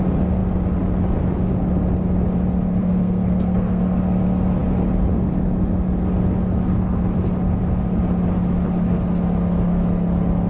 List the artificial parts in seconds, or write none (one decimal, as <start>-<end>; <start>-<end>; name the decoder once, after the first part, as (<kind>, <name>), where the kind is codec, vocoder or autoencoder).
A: 2.8-3.8 (codec, SNAC)